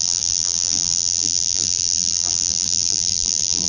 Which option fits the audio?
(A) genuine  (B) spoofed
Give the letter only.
B